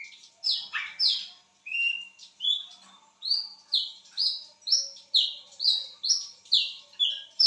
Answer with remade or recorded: recorded